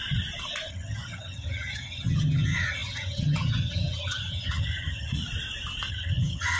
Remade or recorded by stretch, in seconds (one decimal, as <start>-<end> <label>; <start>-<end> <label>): 0.0-0.7 recorded; 0.7-5.1 remade; 5.1-5.9 recorded; 5.9-6.6 remade